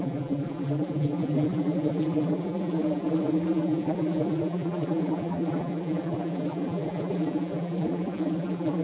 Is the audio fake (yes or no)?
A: yes